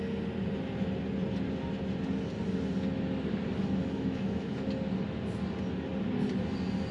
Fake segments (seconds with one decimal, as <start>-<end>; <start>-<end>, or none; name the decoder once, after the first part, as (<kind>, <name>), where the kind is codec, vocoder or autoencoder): 3.8-4.6 (autoencoder, DAC-VAE)

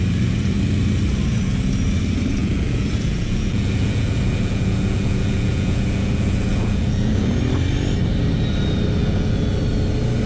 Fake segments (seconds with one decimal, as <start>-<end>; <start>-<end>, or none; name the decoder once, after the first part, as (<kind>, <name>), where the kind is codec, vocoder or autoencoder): 2.4-7.4 (vocoder, Vocos); 9.0-9.6